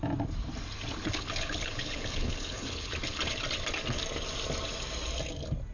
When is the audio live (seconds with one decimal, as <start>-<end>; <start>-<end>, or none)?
0.0-1.0; 2.9-5.7